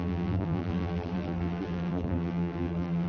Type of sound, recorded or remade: remade